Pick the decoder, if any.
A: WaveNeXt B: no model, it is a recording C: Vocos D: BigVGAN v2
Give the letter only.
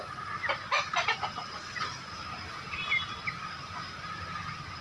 B